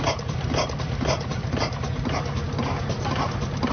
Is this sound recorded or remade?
recorded